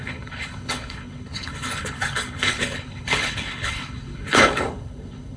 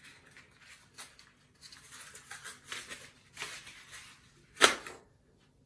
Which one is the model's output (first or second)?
first